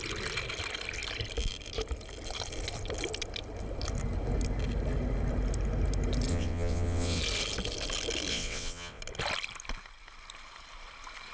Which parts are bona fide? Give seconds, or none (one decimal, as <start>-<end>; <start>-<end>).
0.0-6.3; 7.2-8.3; 9.0-11.3